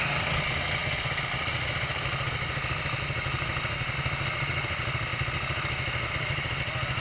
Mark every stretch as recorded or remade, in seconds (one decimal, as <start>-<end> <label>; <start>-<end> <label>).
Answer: 0.0-7.0 recorded